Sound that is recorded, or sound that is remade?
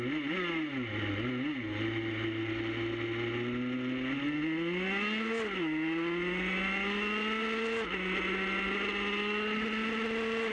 recorded